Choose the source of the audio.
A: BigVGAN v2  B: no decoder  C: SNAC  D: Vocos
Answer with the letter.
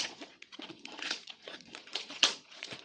D